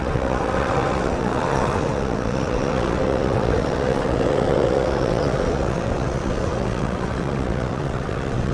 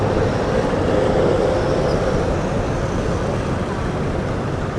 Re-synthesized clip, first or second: first